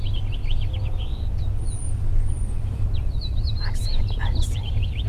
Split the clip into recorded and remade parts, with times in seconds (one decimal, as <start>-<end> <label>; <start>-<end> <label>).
0.0-5.1 recorded